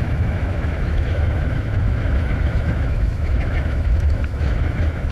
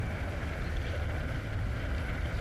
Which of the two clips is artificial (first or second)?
first